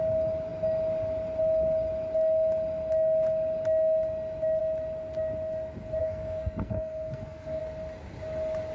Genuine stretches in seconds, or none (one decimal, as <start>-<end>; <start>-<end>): 0.0-6.0; 7.6-8.7

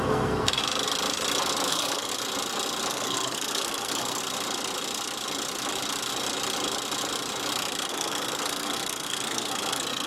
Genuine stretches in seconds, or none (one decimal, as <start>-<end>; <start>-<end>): 0.6-1.7; 2.1-2.9; 4.2-7.9